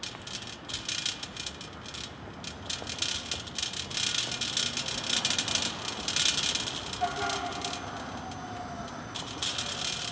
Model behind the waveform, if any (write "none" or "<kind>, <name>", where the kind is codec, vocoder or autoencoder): none